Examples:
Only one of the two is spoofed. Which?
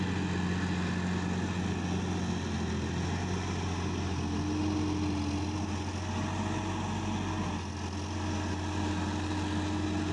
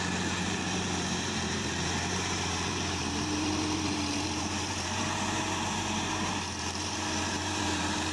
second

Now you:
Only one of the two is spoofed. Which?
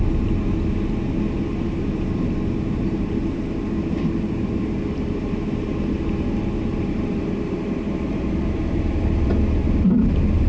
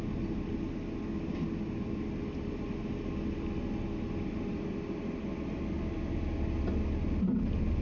first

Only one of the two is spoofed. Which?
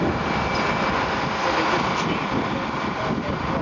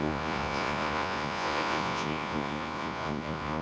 second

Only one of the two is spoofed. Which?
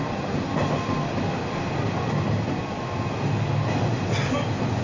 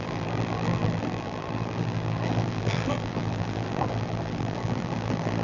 second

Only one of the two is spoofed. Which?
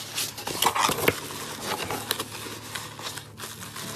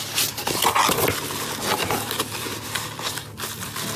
second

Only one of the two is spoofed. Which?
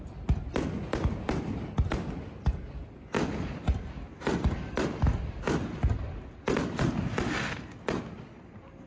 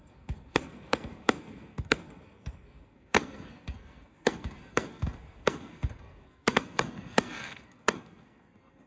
second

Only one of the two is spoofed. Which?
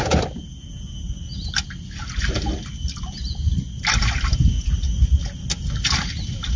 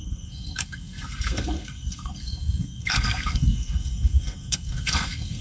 second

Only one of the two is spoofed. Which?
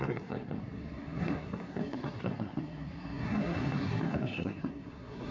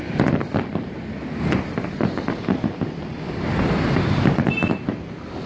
first